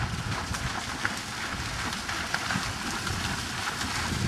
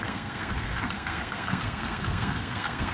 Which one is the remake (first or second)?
second